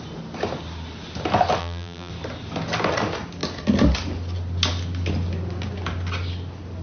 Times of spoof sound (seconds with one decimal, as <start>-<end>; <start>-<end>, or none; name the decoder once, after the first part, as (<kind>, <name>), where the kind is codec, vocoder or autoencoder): 1.6-2.1 (vocoder, BigVGAN v2)